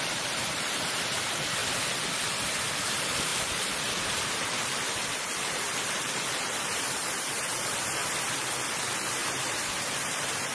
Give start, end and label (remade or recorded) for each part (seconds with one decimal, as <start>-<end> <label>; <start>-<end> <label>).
0.0-1.6 remade; 1.6-2.7 recorded; 2.7-8.0 remade; 8.0-8.7 recorded; 8.7-10.5 remade